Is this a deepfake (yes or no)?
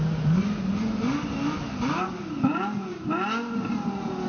no